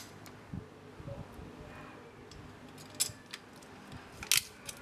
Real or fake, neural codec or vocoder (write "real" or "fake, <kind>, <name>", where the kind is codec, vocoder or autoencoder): real